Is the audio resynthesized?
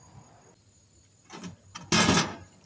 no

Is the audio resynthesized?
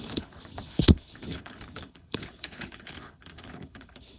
yes